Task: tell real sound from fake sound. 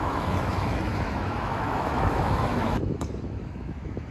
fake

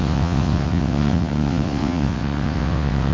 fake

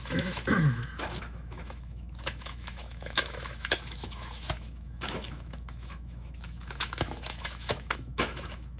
fake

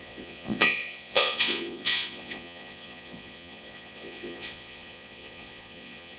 fake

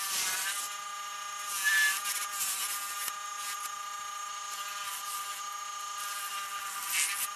real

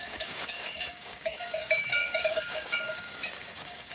fake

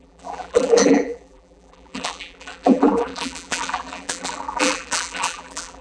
fake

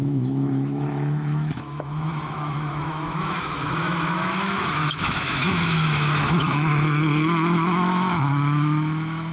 fake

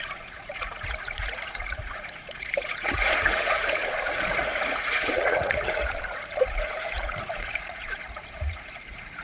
fake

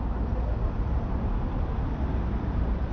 real